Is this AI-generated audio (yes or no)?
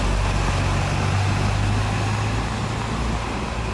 no